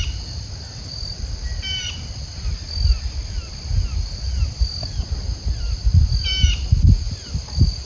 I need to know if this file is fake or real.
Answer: real